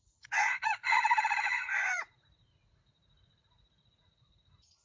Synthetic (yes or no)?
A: yes